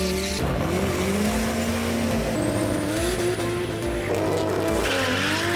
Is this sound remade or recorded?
recorded